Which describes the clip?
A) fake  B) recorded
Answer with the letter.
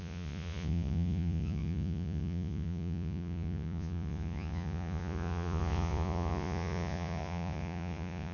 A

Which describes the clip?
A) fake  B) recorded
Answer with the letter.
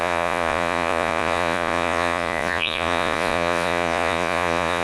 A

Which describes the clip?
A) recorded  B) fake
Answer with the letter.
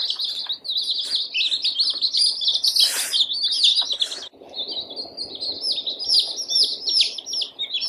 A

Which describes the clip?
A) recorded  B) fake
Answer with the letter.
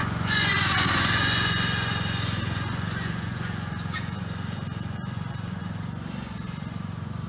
B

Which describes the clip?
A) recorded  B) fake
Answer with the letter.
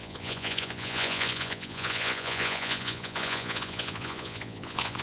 B